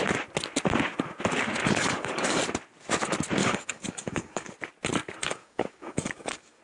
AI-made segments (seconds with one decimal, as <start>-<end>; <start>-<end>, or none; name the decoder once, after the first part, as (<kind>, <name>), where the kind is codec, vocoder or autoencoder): 1.6-2.4 (codec, DAC); 3.4-4.5; 5.2-6.6